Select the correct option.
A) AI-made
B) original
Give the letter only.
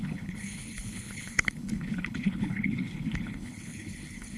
A